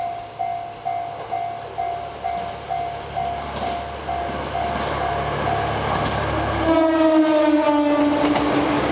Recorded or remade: recorded